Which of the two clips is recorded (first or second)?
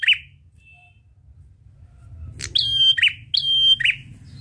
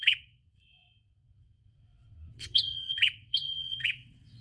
first